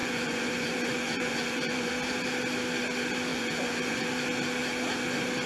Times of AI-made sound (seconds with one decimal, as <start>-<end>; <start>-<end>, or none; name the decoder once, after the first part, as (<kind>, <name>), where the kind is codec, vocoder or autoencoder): 0.0-1.9 (vocoder, Vocos); 3.3-4.1